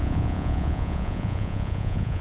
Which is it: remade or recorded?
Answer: remade